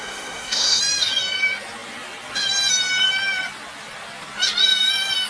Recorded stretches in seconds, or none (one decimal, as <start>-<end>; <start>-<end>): 0.8-5.3